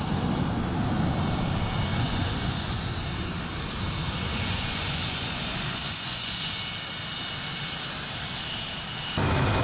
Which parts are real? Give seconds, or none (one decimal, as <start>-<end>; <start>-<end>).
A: 0.0-1.9; 2.9-4.3; 6.5-9.6

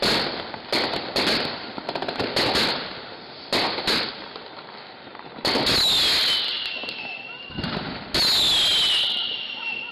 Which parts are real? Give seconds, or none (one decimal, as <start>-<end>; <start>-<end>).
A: 0.0-9.9

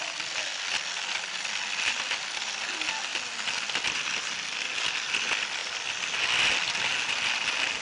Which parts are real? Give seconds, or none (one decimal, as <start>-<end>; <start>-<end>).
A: 0.0-7.8

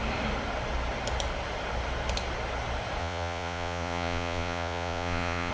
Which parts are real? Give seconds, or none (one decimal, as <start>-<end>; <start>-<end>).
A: 0.0-3.0

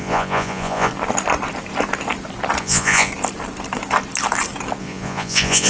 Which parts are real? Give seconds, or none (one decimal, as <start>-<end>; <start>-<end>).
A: 0.9-2.6; 3.1-4.8